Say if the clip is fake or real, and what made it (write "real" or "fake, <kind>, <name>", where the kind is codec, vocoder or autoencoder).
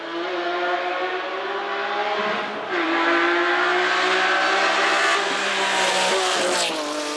real